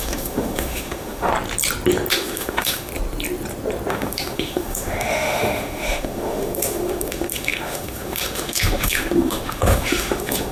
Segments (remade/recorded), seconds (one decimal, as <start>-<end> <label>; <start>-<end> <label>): 0.0-1.3 remade; 1.3-2.1 recorded; 2.1-2.9 remade; 2.9-3.9 recorded; 3.9-10.5 remade